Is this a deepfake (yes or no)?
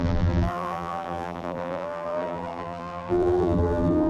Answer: yes